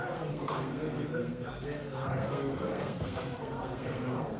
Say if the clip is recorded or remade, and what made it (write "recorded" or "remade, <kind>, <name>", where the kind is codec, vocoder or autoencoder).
remade, codec, SNAC